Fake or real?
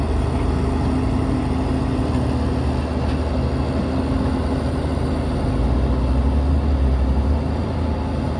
real